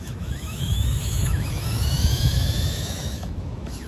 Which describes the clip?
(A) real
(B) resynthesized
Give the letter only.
B